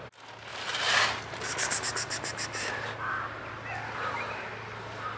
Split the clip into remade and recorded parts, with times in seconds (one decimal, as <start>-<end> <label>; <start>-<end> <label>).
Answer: 0.0-5.2 recorded